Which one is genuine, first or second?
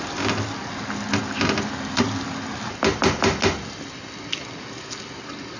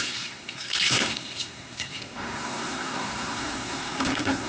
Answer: first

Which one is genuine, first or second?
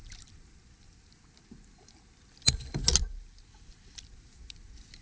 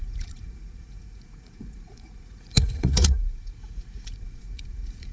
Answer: first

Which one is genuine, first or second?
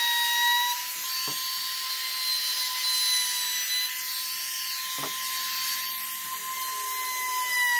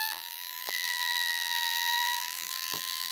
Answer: first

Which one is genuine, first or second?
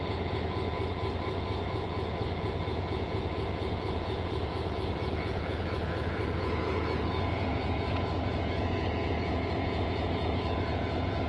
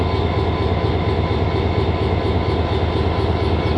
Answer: second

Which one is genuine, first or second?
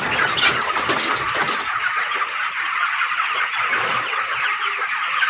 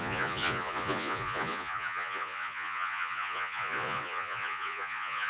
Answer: first